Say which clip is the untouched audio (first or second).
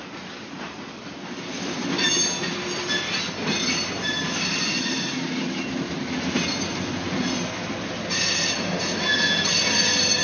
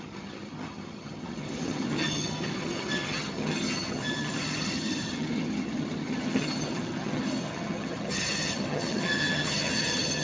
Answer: first